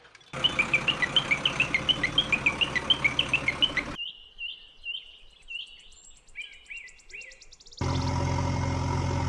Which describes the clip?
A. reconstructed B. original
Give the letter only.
B